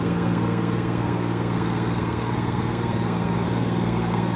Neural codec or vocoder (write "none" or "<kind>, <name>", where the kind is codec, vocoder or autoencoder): codec, SNAC